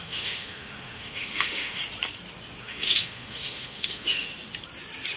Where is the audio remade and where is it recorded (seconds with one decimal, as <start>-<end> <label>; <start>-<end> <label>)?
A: 0.0-1.8 remade; 1.8-2.6 recorded; 2.6-4.3 remade; 4.3-5.2 recorded